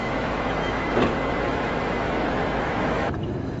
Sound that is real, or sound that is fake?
fake